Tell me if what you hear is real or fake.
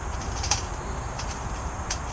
fake